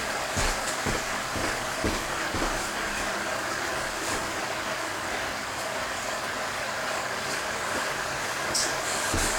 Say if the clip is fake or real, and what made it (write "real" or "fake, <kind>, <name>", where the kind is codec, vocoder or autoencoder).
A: fake, codec, DAC